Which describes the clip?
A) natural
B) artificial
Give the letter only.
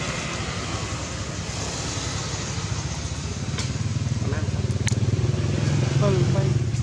A